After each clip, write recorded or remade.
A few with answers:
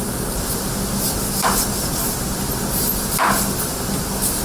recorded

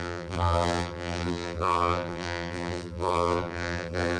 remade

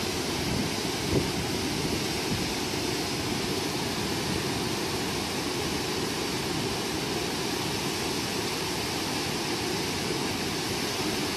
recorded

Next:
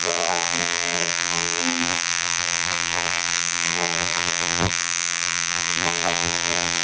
remade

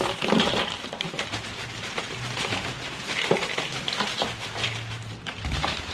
remade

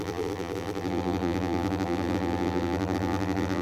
remade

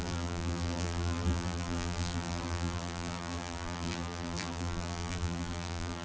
remade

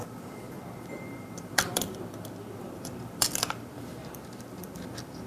remade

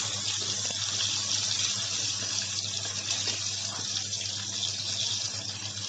recorded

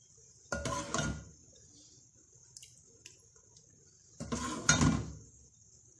recorded